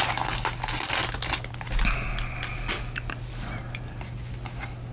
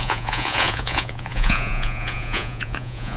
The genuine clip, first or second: first